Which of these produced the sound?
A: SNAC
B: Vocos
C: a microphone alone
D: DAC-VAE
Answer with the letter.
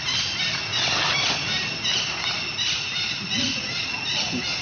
C